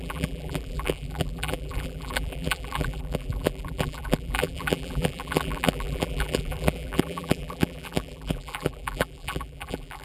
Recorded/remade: remade